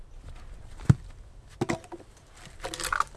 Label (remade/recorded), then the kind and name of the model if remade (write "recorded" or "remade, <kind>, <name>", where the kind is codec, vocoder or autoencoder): recorded